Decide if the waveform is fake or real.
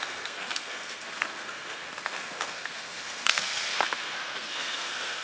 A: fake